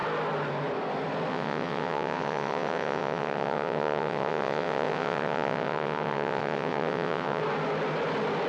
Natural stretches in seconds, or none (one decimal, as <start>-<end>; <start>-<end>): 0.0-1.3; 7.4-8.5